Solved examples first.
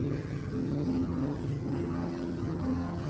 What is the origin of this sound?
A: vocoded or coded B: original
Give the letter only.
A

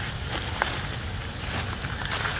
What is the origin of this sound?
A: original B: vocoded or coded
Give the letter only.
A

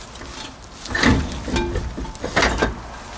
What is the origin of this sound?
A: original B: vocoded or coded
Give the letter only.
A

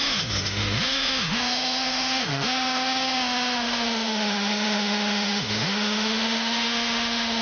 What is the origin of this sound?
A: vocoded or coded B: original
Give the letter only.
A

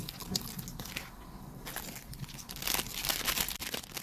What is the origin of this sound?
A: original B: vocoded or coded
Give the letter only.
A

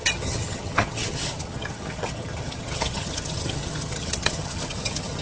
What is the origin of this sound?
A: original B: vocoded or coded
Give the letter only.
B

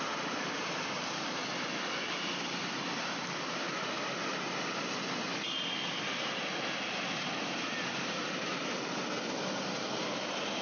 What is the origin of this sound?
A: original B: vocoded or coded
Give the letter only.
A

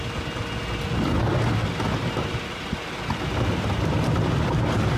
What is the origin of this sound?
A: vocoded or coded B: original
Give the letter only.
B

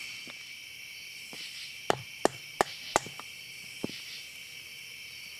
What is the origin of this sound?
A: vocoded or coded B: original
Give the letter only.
B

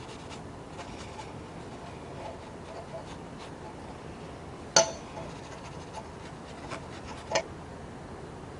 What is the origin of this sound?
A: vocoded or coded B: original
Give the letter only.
B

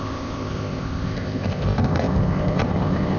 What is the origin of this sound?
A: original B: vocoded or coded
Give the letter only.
B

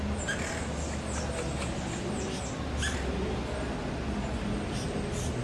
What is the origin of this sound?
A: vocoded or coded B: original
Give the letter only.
B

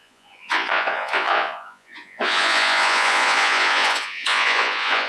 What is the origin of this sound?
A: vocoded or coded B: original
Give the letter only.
A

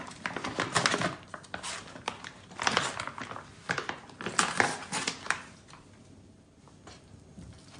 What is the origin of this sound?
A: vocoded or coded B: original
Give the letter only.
B